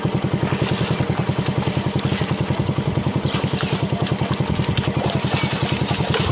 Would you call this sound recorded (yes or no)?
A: yes